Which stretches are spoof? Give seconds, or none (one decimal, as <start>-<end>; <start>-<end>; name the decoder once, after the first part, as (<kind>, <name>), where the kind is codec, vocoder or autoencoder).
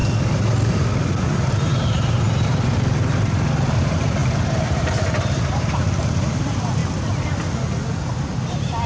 1.2-6.8 (vocoder, BigVGAN v2); 8.5-8.9